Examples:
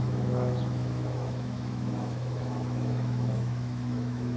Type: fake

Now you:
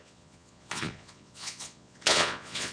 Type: fake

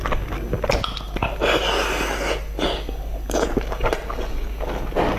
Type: real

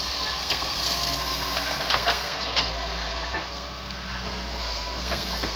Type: fake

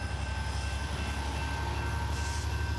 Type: real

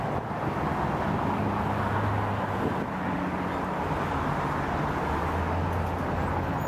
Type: real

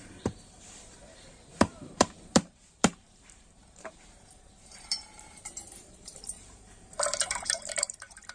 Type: fake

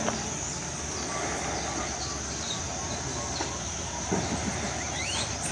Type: real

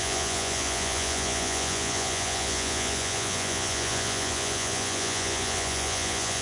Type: fake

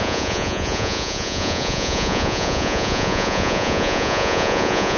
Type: fake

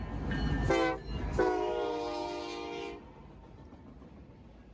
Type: real